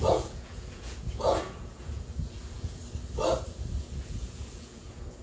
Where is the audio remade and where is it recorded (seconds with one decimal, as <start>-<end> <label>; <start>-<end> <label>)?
0.0-2.8 remade; 2.8-3.8 recorded; 3.8-5.2 remade